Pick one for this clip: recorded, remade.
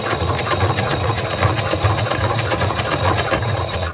remade